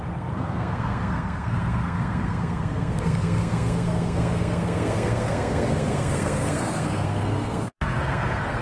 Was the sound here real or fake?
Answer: fake